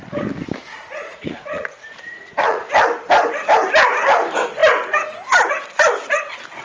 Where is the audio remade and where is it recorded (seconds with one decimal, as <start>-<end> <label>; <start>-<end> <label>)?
0.0-0.7 recorded; 0.7-2.6 remade; 2.6-6.6 recorded